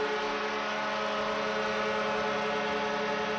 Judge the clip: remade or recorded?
recorded